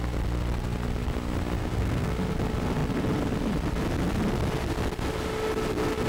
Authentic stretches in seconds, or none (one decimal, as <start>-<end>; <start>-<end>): 0.0-1.6; 2.1-6.1